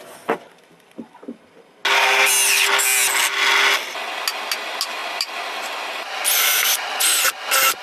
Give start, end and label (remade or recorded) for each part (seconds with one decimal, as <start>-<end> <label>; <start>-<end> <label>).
0.0-7.8 recorded